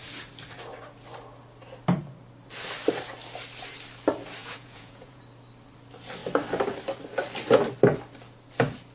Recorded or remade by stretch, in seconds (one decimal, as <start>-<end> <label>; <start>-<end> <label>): 0.0-4.4 recorded; 4.4-5.2 remade; 5.2-8.9 recorded